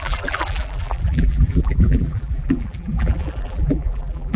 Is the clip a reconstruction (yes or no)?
yes